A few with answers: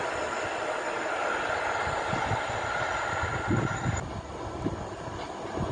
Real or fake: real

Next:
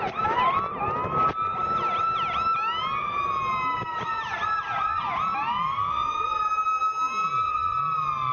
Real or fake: real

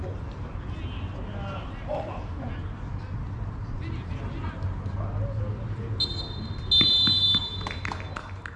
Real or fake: real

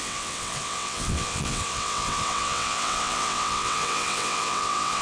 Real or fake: fake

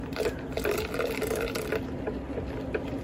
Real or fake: real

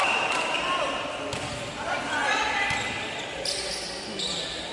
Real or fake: fake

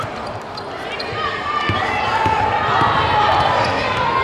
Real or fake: real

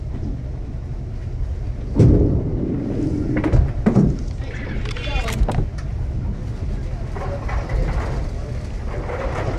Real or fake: real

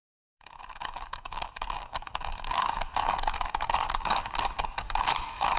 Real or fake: fake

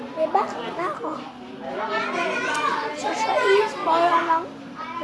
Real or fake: real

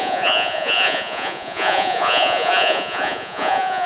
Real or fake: fake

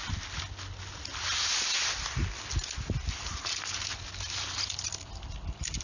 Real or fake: real